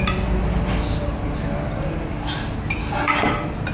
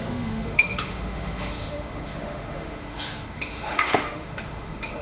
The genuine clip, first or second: first